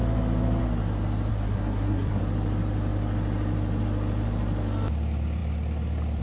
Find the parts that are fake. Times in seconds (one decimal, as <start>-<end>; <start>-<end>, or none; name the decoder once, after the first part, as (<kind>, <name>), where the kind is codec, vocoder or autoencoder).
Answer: 1.3-2.2 (codec, SNAC)